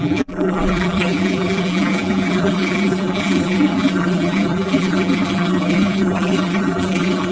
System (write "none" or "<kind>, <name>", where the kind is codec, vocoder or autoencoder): vocoder, BigVGAN v2